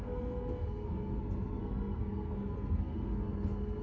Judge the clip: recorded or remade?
remade